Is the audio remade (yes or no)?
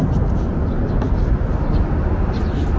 no